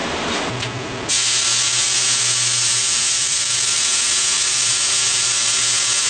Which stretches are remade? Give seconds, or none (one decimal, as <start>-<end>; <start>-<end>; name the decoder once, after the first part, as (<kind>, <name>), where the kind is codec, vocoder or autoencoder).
0.0-1.1 (vocoder, BigVGAN v2); 2.8-3.5